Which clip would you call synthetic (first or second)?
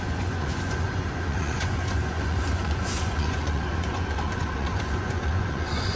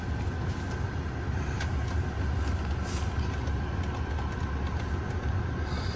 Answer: first